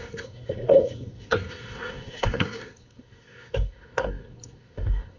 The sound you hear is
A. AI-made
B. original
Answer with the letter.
A